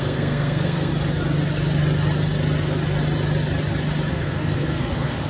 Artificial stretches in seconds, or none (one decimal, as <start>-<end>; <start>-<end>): 0.0-0.9; 4.1-5.3